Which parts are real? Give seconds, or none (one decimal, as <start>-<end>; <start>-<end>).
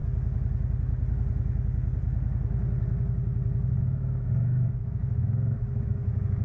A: 0.0-3.8